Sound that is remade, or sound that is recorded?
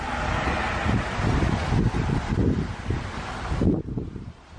recorded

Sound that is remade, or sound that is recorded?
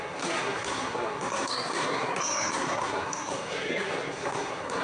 remade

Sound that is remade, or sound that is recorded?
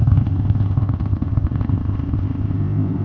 remade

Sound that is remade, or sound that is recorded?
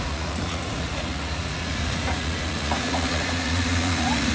remade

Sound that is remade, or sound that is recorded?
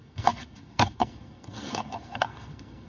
remade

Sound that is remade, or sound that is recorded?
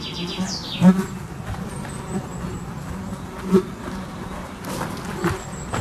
recorded